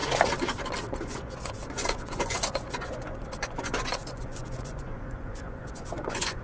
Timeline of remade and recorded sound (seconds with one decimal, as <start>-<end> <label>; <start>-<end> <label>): 0.0-0.9 recorded; 0.9-6.4 remade